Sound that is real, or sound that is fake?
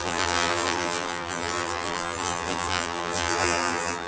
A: fake